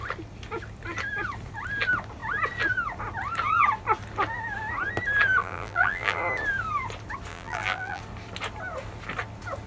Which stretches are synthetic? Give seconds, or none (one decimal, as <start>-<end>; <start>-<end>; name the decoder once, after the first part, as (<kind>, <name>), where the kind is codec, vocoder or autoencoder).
5.4-6.2 (vocoder, BigVGAN v2); 7.3-8.0